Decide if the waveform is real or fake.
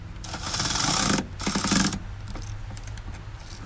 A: real